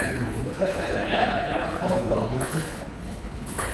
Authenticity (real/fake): fake